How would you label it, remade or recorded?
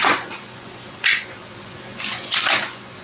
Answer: remade